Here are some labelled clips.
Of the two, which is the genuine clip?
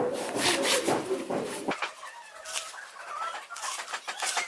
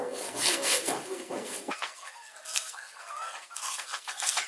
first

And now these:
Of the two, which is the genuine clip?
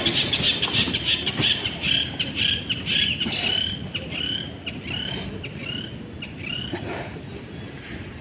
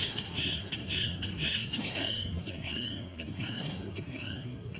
first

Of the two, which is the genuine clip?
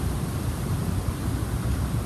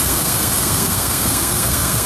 first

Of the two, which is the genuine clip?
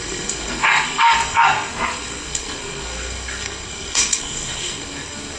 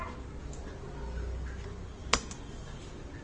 second